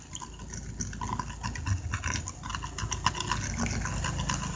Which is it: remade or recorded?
recorded